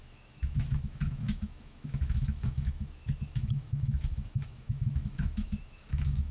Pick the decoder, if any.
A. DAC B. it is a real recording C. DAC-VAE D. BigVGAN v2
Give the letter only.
C